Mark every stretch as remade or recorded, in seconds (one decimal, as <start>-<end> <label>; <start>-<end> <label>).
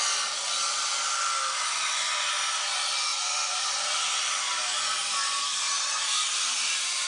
0.0-0.9 recorded; 0.9-2.1 remade; 2.1-3.1 recorded; 3.1-7.1 remade